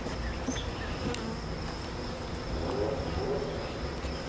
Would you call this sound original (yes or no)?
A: yes